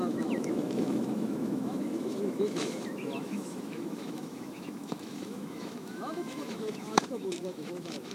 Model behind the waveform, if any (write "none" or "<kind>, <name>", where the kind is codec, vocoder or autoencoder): autoencoder, DAC-VAE